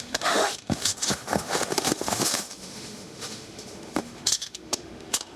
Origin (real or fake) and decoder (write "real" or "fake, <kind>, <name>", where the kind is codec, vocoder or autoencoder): fake, autoencoder, DAC-VAE